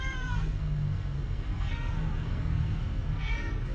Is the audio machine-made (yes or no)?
yes